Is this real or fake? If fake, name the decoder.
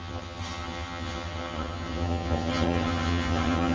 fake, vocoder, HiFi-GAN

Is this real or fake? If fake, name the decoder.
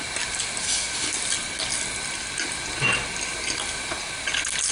real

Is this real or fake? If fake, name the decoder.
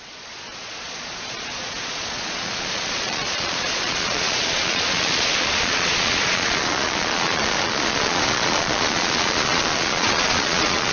fake, vocoder, Vocos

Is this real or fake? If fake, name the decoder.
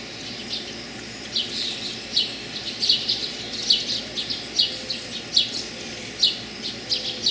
real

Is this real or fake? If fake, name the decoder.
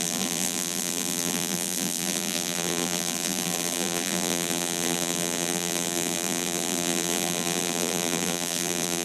fake, vocoder, BigVGAN v2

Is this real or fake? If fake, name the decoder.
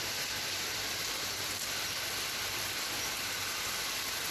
fake, vocoder, BigVGAN v2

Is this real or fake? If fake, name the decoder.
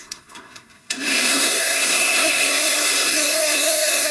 fake, codec, SNAC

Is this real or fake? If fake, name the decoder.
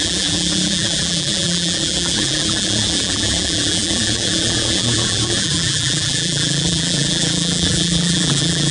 fake, vocoder, BigVGAN v2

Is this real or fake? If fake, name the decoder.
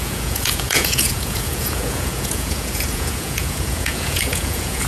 fake, vocoder, Vocos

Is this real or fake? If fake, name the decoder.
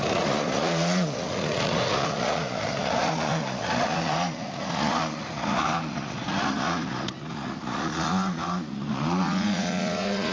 fake, vocoder, Vocos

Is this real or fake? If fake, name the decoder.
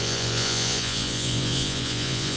fake, vocoder, Vocos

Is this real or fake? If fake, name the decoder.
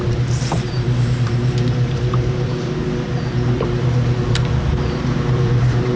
fake, vocoder, BigVGAN v2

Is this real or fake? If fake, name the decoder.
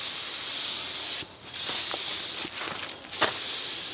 real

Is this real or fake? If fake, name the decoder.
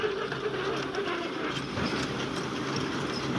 real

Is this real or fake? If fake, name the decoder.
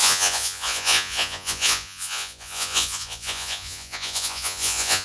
fake, vocoder, Vocos